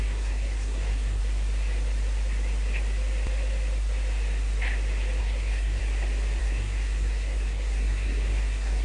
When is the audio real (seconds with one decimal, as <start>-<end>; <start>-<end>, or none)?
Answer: 1.2-5.2; 5.8-6.4